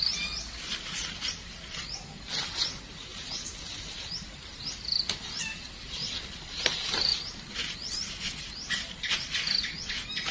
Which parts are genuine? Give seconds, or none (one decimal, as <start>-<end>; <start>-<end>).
0.0-10.3